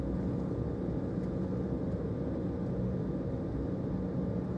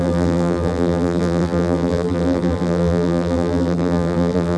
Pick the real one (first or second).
first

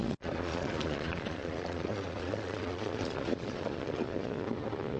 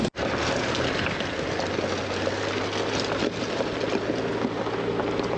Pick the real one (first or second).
second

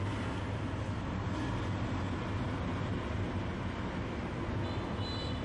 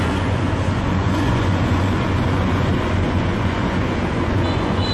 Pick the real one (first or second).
first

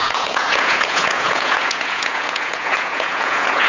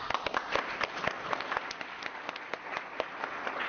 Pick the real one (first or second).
second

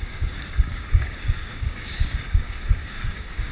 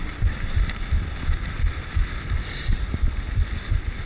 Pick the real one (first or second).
second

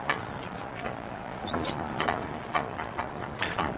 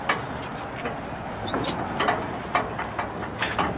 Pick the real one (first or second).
second